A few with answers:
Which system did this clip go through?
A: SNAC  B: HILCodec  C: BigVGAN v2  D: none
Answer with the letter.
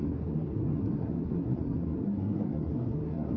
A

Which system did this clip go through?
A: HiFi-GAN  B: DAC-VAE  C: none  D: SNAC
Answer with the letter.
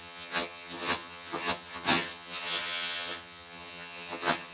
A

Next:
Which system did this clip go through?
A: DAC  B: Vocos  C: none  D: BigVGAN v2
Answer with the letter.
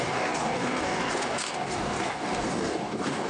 A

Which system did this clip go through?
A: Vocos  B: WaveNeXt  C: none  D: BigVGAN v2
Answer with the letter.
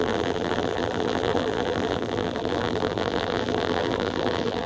D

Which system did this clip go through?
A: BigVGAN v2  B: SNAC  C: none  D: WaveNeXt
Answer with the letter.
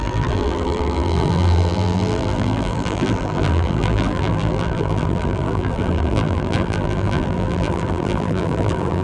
A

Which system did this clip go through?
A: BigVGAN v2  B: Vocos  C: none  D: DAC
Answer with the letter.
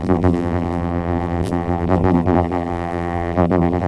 A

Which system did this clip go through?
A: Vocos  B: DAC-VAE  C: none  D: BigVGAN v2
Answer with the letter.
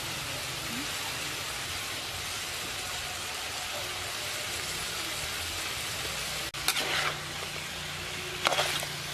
C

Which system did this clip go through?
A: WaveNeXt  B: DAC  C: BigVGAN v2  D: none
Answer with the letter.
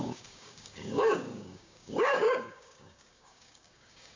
B